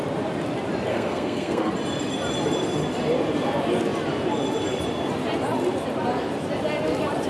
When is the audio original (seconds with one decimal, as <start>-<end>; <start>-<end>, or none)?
0.0-0.9; 1.7-7.3